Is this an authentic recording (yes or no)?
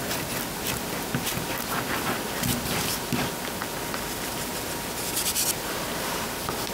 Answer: yes